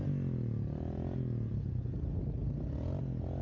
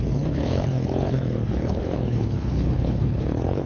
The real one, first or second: first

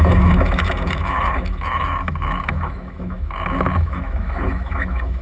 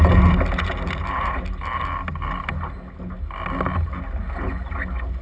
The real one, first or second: second